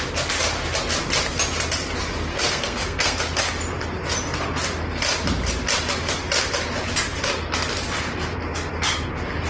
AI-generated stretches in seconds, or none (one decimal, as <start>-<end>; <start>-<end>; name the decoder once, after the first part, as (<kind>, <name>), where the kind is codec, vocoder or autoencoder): 2.3-3.2 (codec, SNAC)